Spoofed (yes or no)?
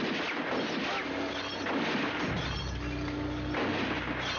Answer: no